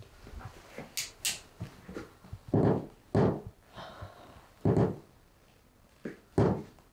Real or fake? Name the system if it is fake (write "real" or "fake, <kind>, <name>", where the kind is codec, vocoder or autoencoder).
real